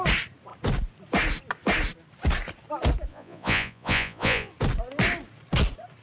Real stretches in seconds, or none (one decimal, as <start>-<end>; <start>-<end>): 0.0-3.1; 4.5-6.0